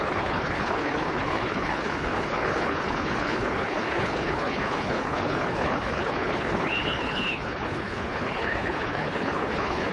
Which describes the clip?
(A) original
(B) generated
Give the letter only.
B